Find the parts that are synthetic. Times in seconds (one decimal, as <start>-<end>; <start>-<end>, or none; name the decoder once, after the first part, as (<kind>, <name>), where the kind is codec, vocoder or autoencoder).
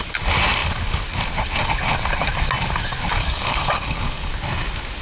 3.2-4.3 (codec, DAC)